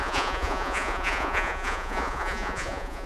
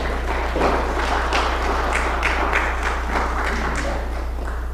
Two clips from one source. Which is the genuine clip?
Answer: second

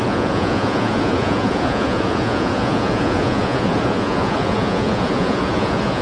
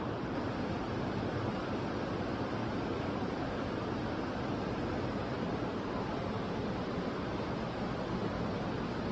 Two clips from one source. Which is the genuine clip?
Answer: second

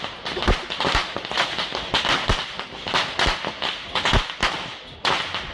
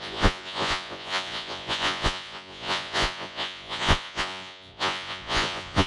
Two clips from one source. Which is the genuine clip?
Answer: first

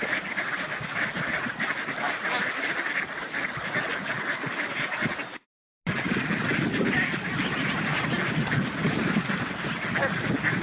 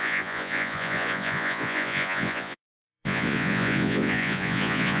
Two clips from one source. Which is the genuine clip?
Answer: first